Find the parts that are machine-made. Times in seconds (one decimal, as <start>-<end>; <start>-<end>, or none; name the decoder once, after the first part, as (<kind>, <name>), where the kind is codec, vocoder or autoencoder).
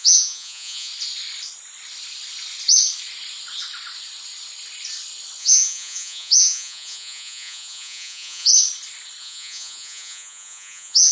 0.0-0.9 (vocoder, Vocos); 5.4-8.5; 9.2-11.1